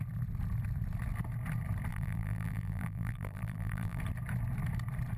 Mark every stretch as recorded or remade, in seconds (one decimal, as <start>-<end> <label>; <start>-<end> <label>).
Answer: 0.0-1.9 recorded; 1.9-4.0 remade; 4.0-5.2 recorded